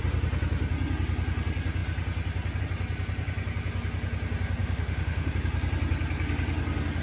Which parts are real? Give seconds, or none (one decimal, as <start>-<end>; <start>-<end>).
0.0-4.6; 5.3-7.0